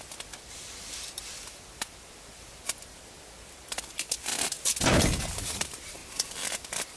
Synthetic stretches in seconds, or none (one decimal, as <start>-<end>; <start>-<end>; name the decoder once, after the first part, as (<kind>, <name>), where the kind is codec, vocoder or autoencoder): 0.0-4.3 (vocoder, BigVGAN v2); 5.4-7.0